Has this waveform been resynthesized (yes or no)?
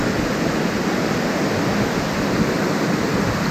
no